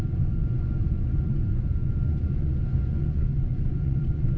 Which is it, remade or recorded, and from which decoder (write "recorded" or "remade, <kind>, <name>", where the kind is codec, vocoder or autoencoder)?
remade, vocoder, Vocos